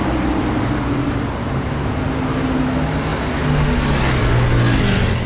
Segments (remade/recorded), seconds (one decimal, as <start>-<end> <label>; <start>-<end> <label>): 0.0-5.3 recorded